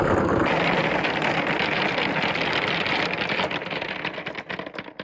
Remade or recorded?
recorded